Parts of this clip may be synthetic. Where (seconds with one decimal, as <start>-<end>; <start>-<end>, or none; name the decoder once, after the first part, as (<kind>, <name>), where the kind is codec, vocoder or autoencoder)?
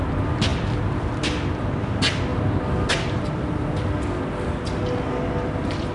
none